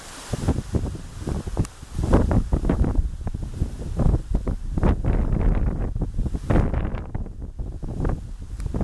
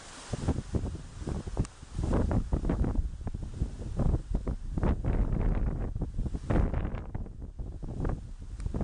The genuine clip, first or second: second